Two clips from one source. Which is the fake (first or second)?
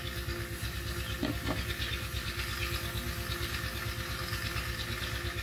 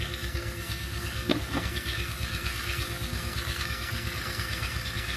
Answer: second